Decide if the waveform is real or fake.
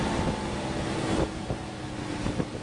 real